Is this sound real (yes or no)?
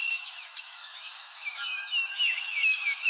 no